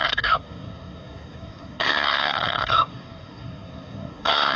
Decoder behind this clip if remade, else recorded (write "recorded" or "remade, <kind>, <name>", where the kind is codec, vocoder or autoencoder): remade, codec, SNAC